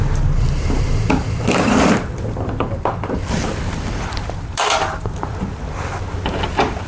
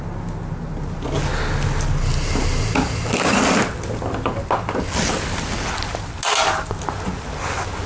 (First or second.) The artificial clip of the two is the first